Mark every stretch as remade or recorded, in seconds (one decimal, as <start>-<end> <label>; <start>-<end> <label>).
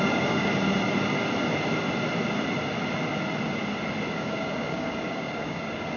0.0-0.5 remade; 0.5-4.1 recorded; 4.1-6.0 remade